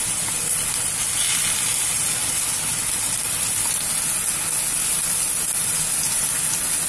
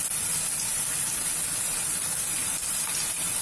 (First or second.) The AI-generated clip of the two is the second